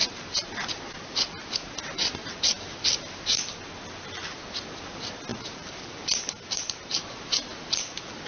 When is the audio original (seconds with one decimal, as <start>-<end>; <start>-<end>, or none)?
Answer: 0.0-2.2; 2.7-5.3; 6.9-8.3